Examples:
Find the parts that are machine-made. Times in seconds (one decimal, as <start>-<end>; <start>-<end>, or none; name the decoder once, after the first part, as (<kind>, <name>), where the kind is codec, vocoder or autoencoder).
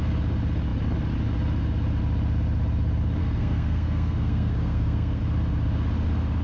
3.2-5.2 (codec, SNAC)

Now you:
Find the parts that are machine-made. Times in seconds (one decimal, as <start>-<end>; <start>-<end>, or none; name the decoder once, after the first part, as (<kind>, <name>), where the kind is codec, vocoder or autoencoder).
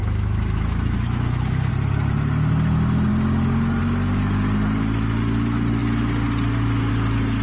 0.0-1.7 (autoencoder, DAC-VAE)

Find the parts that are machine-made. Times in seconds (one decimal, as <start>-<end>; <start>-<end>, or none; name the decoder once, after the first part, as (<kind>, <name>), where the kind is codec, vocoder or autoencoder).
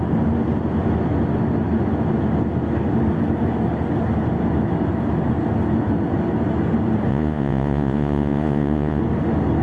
7.1-9.0 (vocoder, Vocos)